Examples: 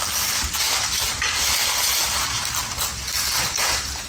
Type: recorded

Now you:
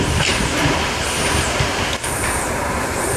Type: remade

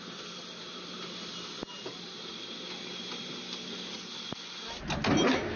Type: recorded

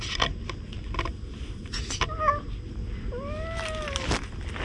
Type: recorded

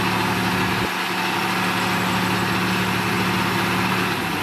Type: recorded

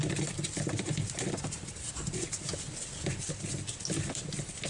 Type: recorded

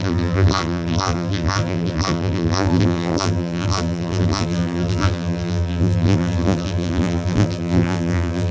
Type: remade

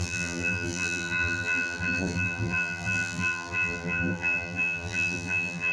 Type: remade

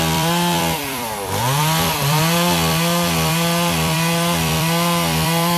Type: remade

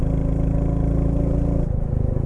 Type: recorded